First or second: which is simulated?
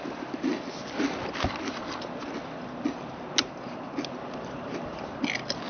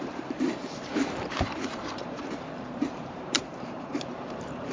second